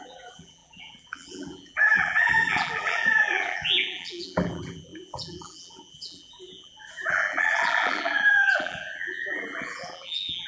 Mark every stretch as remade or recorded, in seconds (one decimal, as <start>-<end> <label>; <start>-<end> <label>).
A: 0.0-10.5 remade